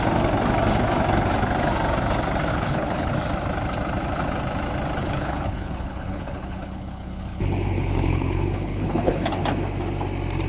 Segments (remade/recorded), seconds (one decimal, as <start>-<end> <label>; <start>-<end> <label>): 0.0-2.5 recorded; 2.5-3.1 remade; 3.1-5.0 recorded; 5.0-9.4 remade; 9.4-10.5 recorded